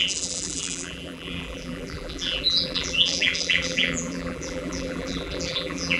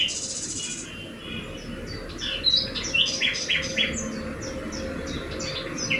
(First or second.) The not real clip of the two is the first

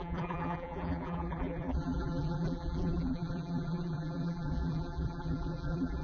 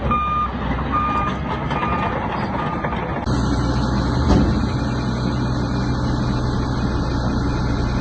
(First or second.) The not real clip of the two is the first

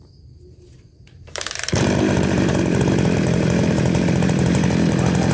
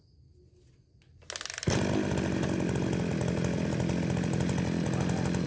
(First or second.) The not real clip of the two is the first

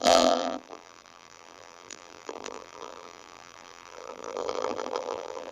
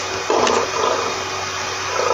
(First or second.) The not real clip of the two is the first